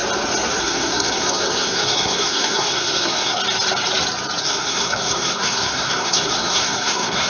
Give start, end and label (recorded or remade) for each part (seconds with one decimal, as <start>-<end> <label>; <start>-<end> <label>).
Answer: 0.0-0.6 recorded; 0.6-3.4 remade; 3.4-4.4 recorded; 4.4-7.3 remade